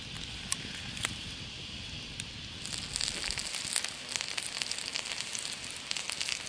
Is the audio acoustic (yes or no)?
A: yes